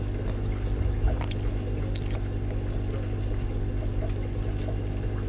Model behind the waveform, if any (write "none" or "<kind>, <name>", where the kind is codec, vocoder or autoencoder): none